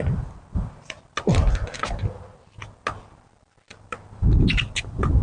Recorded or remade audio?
recorded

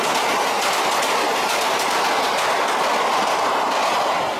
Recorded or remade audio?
recorded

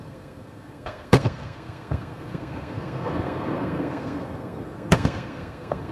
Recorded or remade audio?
remade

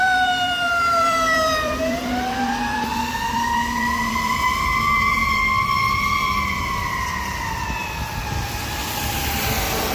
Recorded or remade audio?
remade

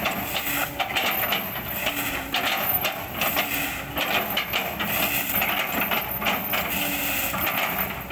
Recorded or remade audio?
recorded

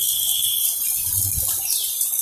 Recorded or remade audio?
remade